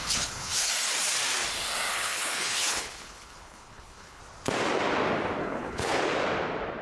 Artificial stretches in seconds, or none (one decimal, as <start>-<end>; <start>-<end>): 0.0-0.7; 1.9-4.2; 5.4-6.0